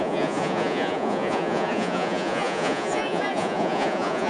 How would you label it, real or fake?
fake